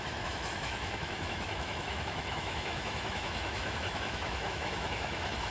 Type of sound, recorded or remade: remade